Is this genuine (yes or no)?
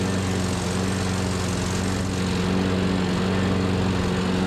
yes